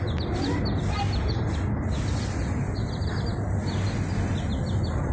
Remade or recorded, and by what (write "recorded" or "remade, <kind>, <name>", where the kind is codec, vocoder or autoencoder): recorded